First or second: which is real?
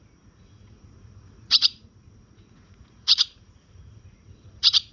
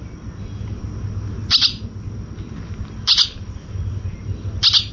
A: second